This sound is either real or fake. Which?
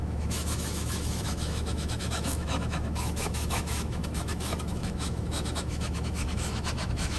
fake